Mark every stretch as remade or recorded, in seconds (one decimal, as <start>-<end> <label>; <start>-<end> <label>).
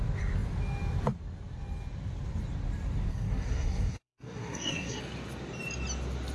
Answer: 0.0-3.1 recorded; 3.1-5.0 remade; 5.0-6.3 recorded